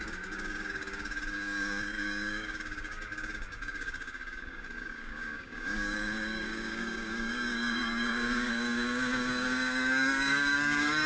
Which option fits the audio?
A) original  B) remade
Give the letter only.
B